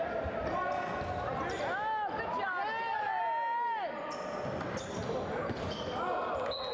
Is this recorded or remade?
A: recorded